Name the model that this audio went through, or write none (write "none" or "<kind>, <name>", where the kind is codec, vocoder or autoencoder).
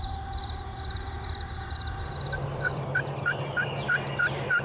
none